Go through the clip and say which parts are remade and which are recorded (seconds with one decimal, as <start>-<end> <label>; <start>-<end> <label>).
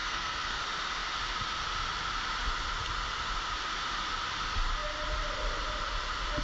0.0-0.6 remade; 0.6-6.4 recorded